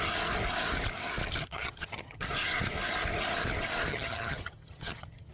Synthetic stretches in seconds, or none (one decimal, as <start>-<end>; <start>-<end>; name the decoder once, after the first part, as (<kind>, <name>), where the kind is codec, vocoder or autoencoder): 1.4-2.3 (vocoder, HiFi-GAN); 3.9-5.3